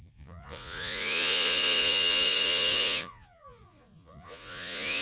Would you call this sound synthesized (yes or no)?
yes